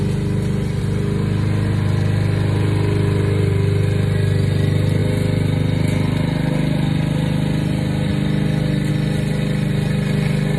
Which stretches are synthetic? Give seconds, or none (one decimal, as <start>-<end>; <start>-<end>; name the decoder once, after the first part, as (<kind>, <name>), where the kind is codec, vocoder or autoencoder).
none

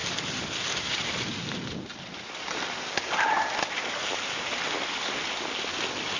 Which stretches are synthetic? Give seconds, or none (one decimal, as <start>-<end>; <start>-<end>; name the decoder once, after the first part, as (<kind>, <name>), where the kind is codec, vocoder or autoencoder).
none